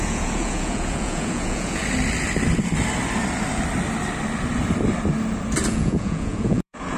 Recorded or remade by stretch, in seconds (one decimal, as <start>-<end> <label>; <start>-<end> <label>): 0.0-1.8 remade; 1.8-5.7 recorded; 5.7-7.0 remade